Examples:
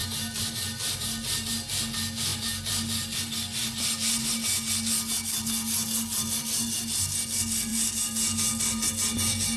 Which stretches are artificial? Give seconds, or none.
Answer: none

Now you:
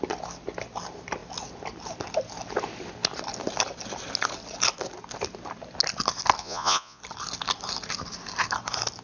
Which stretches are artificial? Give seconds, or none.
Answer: 6.4-7.0 (vocoder, Vocos)

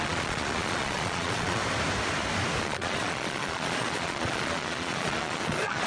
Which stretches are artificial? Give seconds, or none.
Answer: 0.0-1.6 (vocoder, Vocos); 2.6-5.9

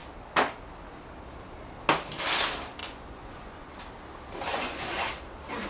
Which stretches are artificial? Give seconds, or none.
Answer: 2.8-3.7 (vocoder, Vocos); 4.5-5.1

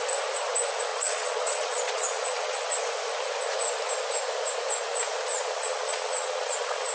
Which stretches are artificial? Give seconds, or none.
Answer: 0.9-2.8 (vocoder, Vocos); 5.3-6.9

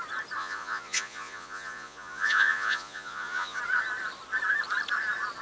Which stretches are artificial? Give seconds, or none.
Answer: 0.4-3.6 (vocoder, Vocos)